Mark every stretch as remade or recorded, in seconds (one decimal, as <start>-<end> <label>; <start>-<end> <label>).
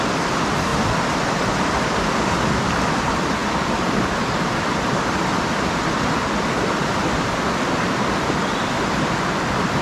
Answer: 0.0-0.7 recorded; 0.7-2.6 remade; 2.6-7.0 recorded; 7.0-7.8 remade; 7.8-9.8 recorded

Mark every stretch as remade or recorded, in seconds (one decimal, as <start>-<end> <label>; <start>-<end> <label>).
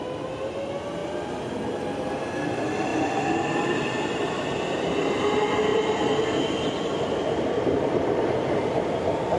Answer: 0.0-2.9 recorded; 2.9-5.0 remade; 5.0-5.7 recorded; 5.7-7.1 remade; 7.1-9.4 recorded